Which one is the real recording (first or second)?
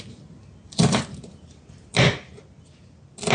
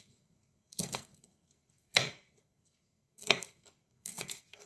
first